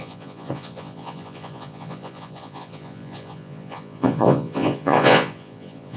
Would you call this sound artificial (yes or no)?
yes